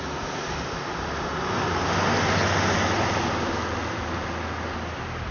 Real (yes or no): yes